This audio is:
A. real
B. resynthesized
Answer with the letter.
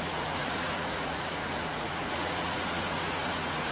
B